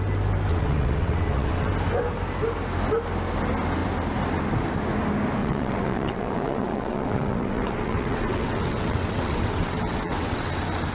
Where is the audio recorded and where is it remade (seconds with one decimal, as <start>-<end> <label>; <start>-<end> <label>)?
0.0-0.5 recorded; 0.5-1.7 remade; 1.7-5.4 recorded; 5.4-10.5 remade; 10.5-10.9 recorded